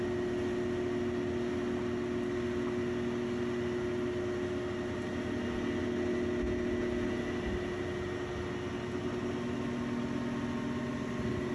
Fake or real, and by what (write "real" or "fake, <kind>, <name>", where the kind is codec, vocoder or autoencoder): real